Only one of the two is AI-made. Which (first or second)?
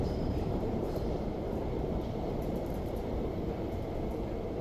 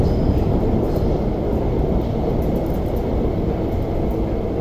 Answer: first